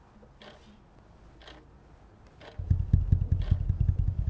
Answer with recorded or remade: recorded